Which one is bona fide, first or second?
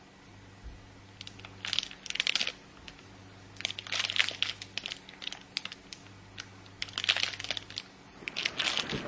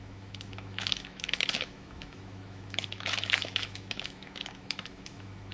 first